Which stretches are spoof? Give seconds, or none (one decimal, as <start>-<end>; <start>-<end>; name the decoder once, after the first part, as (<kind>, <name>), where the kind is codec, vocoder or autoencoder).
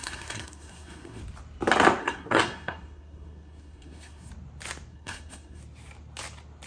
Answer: 0.0-1.2 (codec, SNAC); 2.0-4.3; 4.9-5.6